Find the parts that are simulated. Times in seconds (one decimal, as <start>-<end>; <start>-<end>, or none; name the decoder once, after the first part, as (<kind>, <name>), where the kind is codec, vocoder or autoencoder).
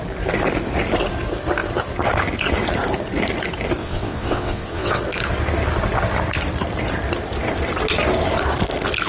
3.8-5.0 (vocoder, WaveNeXt)